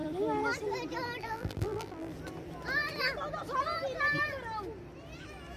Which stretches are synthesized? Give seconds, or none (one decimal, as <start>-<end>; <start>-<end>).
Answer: 1.2-2.1

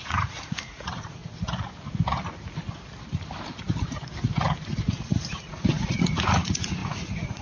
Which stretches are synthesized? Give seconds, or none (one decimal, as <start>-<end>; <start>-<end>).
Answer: 0.0-1.2; 4.9-7.4

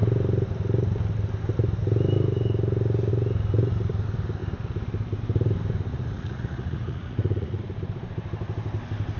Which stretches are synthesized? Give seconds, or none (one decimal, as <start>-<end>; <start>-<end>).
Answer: 5.9-7.6

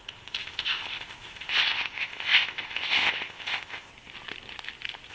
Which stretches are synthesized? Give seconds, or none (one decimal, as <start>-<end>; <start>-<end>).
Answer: 0.0-3.9